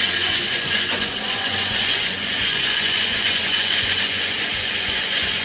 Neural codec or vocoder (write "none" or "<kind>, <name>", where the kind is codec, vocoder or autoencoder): vocoder, Vocos